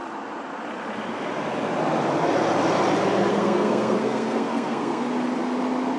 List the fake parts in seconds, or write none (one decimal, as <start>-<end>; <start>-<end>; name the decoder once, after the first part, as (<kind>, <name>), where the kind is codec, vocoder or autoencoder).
3.3-5.0 (codec, SNAC)